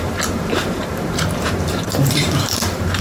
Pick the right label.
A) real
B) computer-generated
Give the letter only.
B